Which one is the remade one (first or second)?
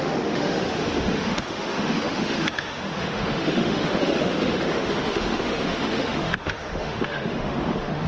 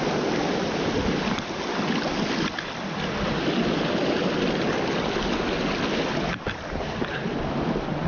first